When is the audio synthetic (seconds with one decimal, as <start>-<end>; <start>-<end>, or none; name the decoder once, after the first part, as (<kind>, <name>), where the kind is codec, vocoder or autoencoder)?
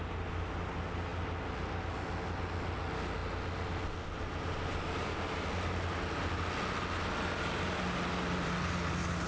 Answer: none